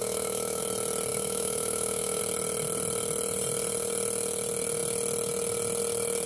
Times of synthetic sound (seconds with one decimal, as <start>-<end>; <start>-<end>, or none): 0.0-0.6; 1.1-2.2